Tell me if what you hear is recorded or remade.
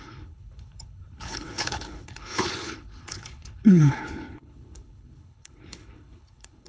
remade